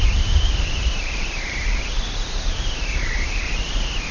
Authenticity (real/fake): fake